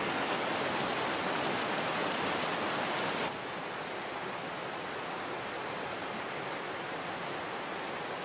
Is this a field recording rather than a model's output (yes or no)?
yes